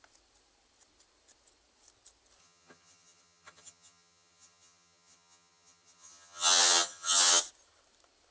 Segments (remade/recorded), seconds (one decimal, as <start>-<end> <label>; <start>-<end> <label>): 0.0-2.4 recorded; 2.4-7.4 remade; 7.4-8.3 recorded